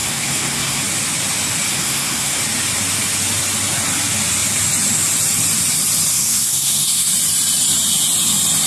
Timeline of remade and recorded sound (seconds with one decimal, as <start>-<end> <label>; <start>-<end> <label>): 0.0-0.8 remade; 0.8-1.7 recorded; 1.7-2.4 remade; 2.4-6.1 recorded; 6.1-7.1 remade; 7.1-8.7 recorded